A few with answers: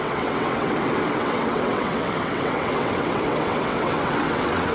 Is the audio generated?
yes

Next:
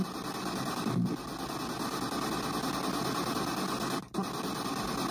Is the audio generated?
no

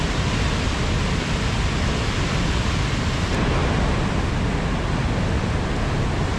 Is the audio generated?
no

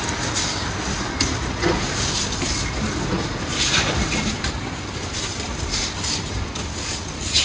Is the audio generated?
no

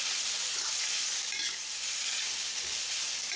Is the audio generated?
no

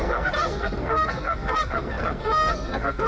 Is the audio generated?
yes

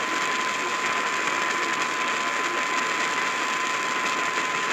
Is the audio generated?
no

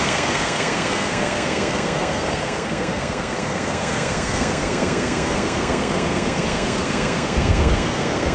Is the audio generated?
yes